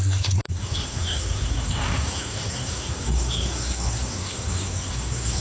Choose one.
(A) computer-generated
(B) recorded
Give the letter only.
A